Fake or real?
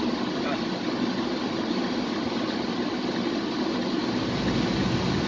real